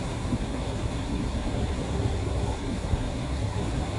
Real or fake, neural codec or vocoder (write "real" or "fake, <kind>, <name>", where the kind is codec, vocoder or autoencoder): fake, codec, SNAC